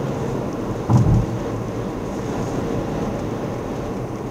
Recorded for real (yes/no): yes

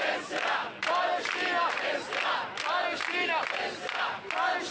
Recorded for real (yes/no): yes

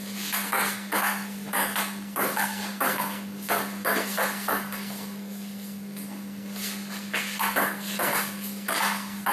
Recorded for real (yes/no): no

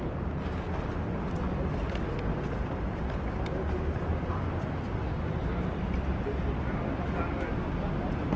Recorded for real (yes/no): yes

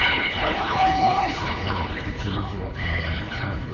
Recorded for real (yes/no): no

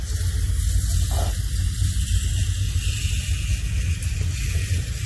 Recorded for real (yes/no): yes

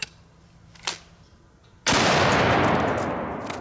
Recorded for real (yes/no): yes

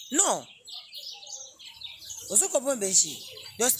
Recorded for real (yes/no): yes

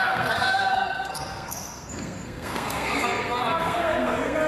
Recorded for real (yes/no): no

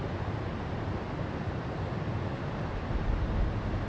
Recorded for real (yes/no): yes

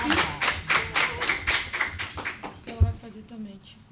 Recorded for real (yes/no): yes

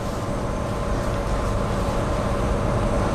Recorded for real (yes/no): yes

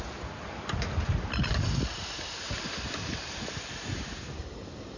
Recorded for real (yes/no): yes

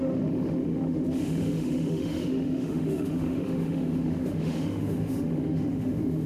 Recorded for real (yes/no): no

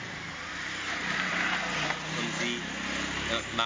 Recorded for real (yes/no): yes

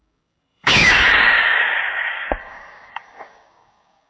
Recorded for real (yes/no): no